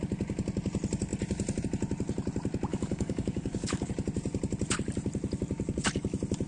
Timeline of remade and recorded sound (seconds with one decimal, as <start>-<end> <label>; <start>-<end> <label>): 0.0-2.7 recorded; 2.7-3.9 remade; 3.9-6.5 recorded